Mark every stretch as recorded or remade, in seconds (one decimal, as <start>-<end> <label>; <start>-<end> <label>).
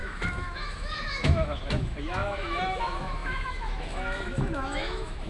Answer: 0.0-5.3 remade